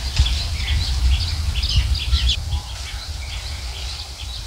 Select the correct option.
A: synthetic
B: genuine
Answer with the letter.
B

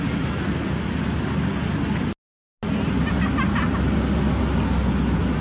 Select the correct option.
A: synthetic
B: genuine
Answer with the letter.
B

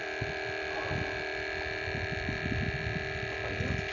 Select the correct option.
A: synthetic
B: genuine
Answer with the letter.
A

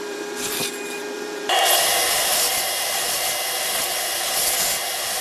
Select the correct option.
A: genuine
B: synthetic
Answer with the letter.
B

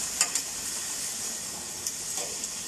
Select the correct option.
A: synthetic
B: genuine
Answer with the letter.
B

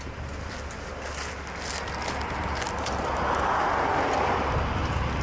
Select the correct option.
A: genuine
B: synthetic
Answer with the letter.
A